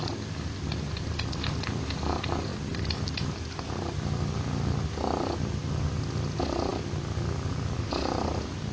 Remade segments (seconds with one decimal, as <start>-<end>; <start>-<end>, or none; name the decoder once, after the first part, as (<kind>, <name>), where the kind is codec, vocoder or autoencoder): none